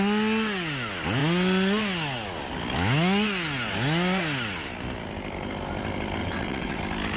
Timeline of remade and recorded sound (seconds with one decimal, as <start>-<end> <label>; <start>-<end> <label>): 0.0-6.2 recorded; 6.2-6.8 remade; 6.8-7.2 recorded